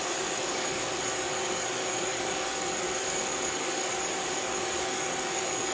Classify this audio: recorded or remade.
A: remade